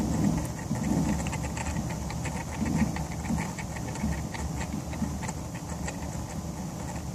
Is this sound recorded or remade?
recorded